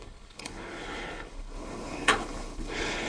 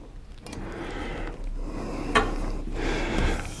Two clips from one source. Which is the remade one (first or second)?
first